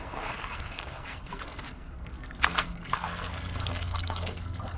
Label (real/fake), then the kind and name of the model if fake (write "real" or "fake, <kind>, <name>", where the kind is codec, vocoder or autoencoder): fake, codec, SNAC